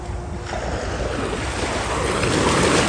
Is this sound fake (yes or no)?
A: no